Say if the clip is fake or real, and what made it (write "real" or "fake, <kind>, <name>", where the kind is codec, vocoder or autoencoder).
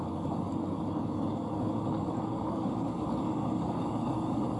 fake, codec, DAC